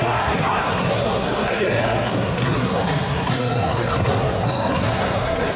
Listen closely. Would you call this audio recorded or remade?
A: remade